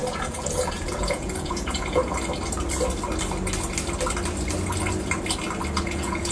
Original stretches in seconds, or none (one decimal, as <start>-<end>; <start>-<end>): 2.0-5.8